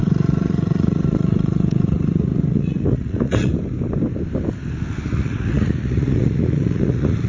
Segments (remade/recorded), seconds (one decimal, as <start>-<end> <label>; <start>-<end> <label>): 0.0-3.5 remade; 3.5-5.1 recorded; 5.1-7.3 remade